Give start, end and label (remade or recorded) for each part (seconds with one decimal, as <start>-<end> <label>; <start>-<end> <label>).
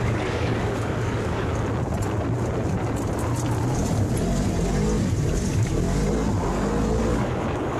0.0-1.5 remade; 1.5-5.5 recorded; 5.5-6.0 remade; 6.0-7.1 recorded; 7.1-7.8 remade